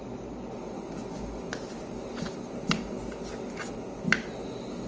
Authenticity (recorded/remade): recorded